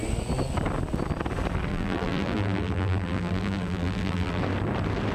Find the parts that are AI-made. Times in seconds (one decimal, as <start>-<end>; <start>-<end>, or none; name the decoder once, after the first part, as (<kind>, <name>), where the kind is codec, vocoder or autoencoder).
1.7-4.4 (vocoder, BigVGAN v2)